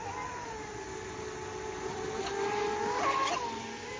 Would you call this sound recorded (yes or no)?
yes